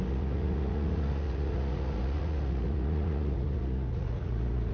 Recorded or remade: remade